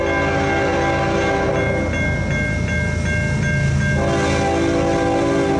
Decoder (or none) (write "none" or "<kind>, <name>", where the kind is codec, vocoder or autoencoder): none